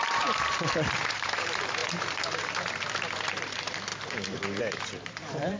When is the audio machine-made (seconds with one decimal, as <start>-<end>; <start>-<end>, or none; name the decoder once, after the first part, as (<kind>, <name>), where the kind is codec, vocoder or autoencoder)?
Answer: 0.0-5.6 (vocoder, BigVGAN v2)